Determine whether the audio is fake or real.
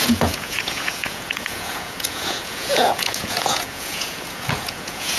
fake